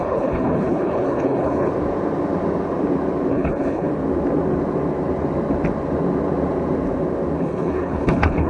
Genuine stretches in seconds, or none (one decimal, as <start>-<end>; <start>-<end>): 1.7-3.3; 3.9-7.4